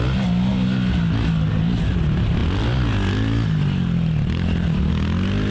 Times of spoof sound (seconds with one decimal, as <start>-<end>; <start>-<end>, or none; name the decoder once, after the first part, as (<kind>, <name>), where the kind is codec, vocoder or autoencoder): none